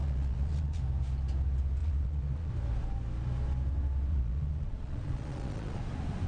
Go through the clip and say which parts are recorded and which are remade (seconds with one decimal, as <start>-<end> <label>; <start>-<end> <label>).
0.0-0.8 remade; 0.8-1.8 recorded; 1.8-2.5 remade; 2.5-4.1 recorded; 4.1-5.8 remade; 5.8-6.3 recorded